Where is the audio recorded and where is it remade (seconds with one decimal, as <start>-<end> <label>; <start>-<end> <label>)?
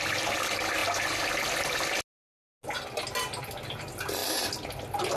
0.0-5.2 recorded